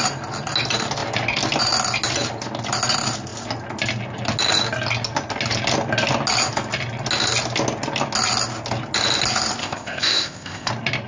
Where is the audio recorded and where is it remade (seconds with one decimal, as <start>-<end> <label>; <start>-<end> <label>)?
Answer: 0.0-9.6 recorded; 9.6-10.7 remade; 10.7-11.1 recorded